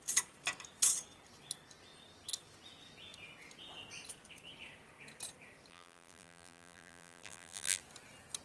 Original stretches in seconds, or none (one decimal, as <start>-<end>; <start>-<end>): 0.0-5.7; 7.8-8.4